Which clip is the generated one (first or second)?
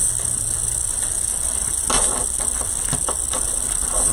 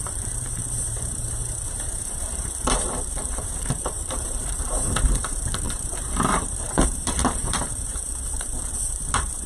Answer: second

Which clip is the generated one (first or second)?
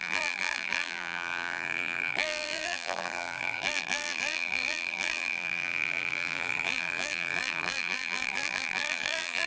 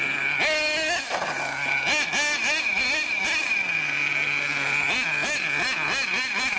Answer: first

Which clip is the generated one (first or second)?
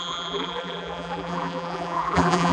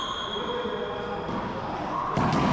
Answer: first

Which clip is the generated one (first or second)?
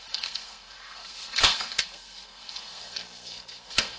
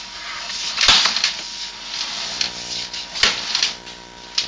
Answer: first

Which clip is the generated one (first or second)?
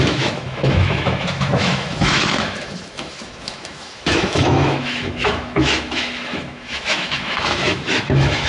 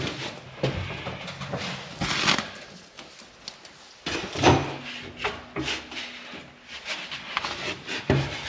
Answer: first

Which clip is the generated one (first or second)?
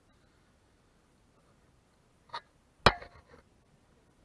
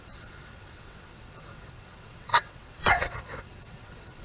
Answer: second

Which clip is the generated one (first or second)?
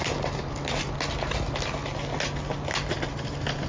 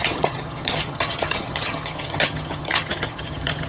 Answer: second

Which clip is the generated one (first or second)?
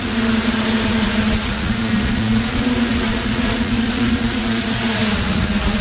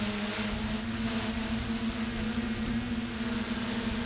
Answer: first